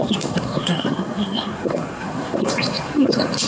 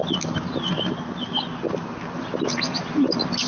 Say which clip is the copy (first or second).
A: first